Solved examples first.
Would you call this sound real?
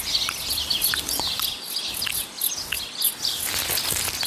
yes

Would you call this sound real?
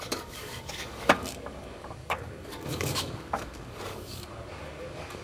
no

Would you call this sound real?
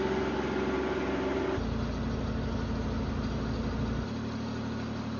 yes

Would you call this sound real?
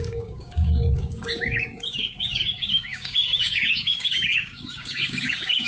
no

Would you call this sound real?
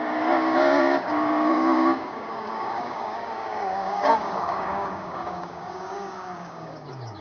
no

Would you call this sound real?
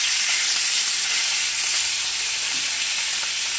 yes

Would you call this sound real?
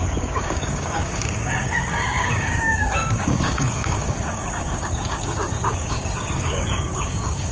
no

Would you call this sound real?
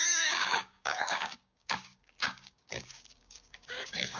no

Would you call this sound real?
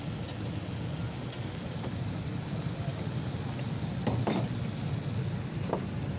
yes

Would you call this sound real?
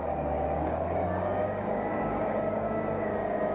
no